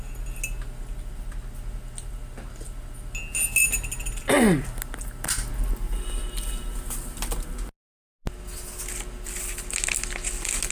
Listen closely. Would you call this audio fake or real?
real